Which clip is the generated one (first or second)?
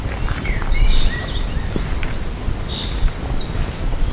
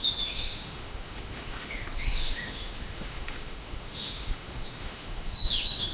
second